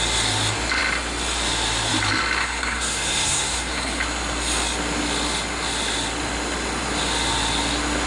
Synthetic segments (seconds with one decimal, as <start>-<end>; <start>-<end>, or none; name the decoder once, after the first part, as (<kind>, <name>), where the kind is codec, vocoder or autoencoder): 2.4-4.0 (codec, SNAC)